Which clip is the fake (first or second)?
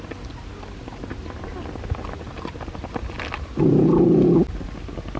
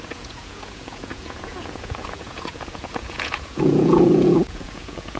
second